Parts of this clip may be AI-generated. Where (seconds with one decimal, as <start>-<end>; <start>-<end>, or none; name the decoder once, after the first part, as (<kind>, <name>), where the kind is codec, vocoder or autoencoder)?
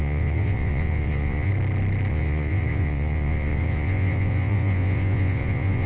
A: 0.0-1.5 (vocoder, Vocos); 2.1-5.9